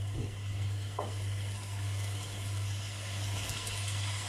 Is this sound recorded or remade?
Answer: remade